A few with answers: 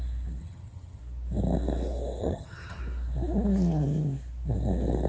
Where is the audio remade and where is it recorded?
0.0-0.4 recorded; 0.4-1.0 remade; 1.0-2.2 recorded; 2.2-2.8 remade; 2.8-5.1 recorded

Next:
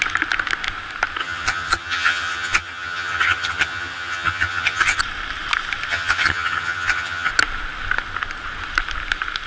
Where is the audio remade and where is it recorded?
0.0-1.2 recorded; 1.2-5.0 remade; 5.0-5.9 recorded; 5.9-7.3 remade; 7.3-9.5 recorded

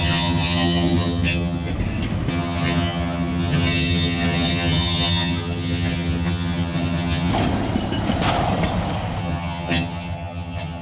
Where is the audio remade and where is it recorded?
0.0-1.7 remade; 1.7-2.3 recorded; 2.3-7.3 remade; 7.3-9.2 recorded; 9.2-10.8 remade

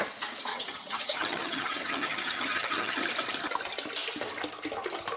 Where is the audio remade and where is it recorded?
0.0-0.5 recorded; 0.5-3.0 remade; 3.0-5.2 recorded

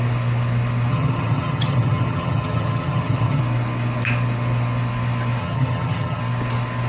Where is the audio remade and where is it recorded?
0.0-0.9 recorded; 0.9-3.4 remade; 3.4-5.4 recorded; 5.4-6.2 remade; 6.2-6.9 recorded